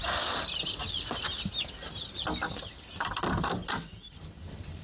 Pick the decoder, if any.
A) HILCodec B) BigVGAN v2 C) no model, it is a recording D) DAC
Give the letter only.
B